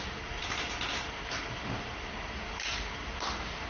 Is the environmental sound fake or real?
fake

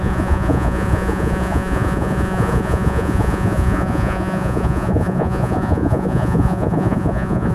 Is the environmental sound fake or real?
fake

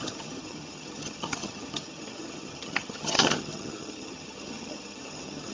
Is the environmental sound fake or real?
fake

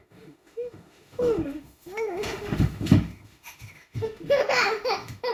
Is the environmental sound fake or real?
fake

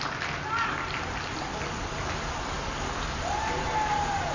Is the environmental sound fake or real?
real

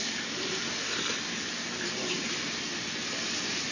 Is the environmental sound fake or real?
real